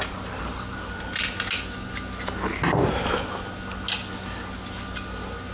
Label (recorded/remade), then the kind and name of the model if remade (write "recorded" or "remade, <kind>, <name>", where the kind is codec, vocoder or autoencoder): recorded